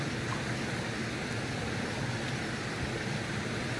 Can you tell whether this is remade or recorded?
recorded